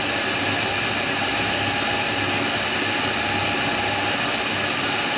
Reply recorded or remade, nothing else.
recorded